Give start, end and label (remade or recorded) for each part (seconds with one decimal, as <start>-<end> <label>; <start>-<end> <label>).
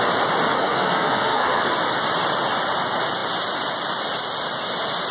0.0-0.5 recorded; 0.5-1.7 remade; 1.7-5.1 recorded